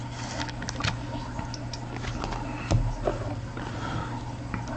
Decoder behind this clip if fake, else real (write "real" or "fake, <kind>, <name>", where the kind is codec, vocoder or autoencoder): real